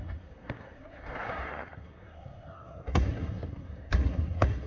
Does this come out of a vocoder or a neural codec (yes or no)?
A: yes